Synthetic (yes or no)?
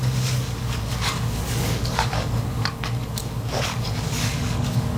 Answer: yes